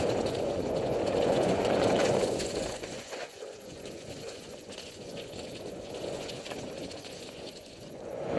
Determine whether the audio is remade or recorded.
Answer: remade